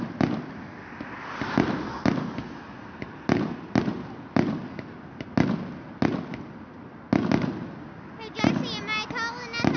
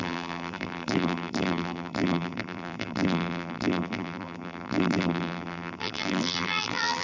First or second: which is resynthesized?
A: second